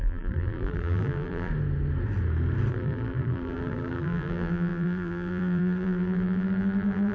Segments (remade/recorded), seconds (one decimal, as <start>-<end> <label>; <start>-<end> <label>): 0.0-1.5 remade; 1.5-2.7 recorded; 2.7-7.1 remade